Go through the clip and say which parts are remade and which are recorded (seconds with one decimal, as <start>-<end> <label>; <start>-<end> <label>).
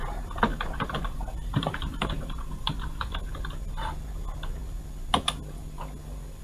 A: 0.0-0.5 recorded; 0.5-3.2 remade; 3.2-6.4 recorded